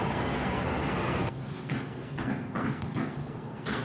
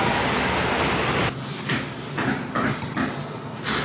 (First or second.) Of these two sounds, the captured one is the second